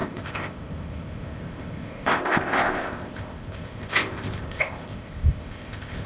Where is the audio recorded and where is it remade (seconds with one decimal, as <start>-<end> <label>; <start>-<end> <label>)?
0.0-6.1 remade